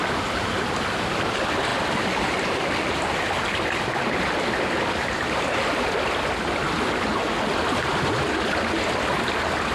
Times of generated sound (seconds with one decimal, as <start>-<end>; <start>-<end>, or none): none

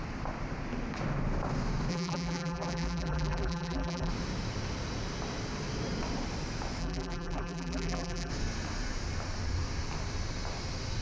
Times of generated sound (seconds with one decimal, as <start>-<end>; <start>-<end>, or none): 1.9-4.1; 6.8-8.3